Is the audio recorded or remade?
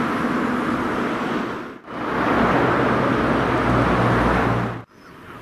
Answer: recorded